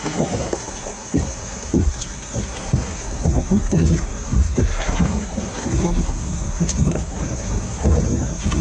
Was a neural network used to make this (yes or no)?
yes